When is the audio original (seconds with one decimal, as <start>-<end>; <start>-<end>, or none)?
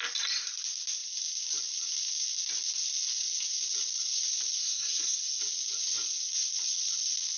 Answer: 0.0-4.6; 5.4-7.4